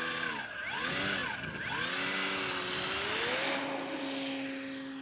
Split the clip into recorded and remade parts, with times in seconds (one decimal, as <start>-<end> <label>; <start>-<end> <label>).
0.0-5.0 recorded